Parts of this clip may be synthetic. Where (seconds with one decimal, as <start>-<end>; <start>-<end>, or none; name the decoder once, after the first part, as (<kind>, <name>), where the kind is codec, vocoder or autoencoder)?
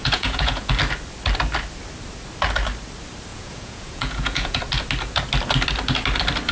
0.0-0.7 (vocoder, Vocos); 3.3-4.6